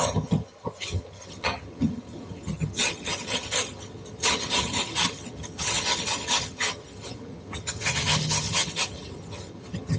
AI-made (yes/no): yes